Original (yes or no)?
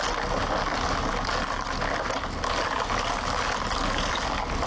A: yes